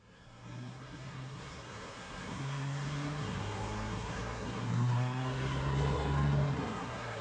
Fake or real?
fake